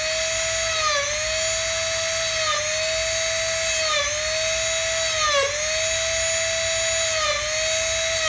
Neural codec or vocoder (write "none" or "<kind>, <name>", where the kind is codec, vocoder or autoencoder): none